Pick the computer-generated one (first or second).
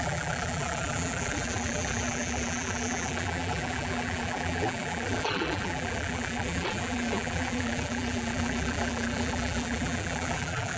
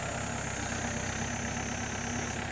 first